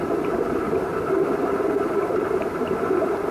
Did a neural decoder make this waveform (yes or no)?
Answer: yes